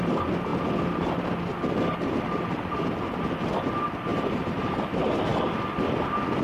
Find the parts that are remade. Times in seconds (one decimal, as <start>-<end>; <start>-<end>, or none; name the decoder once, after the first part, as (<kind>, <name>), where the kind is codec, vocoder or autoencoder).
4.1-4.8 (vocoder, BigVGAN v2)

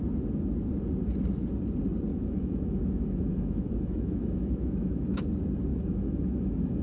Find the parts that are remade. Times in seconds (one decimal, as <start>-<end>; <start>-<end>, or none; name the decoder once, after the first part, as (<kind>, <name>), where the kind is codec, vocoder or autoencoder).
2.1-5.2 (autoencoder, DAC-VAE); 5.7-6.8